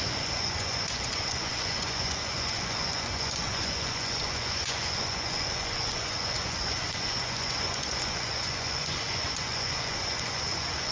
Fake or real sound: fake